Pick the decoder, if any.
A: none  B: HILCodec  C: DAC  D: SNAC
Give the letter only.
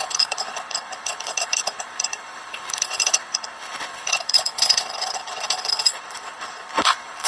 B